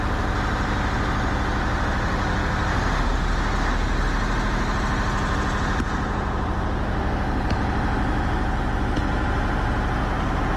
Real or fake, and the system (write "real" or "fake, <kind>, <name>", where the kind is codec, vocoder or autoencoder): real